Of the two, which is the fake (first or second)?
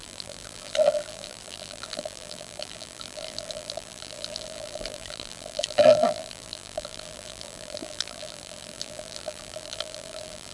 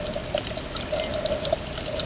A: first